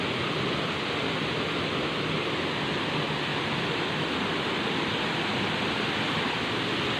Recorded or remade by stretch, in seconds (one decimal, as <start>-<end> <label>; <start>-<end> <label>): 0.0-7.0 recorded